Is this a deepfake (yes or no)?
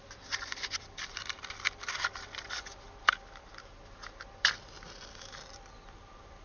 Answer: yes